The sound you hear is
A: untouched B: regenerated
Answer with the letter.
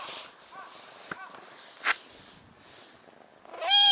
A